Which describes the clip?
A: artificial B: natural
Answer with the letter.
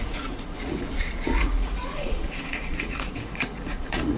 A